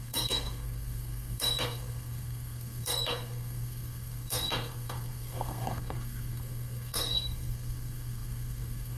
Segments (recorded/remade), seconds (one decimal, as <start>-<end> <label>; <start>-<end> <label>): 0.0-9.0 remade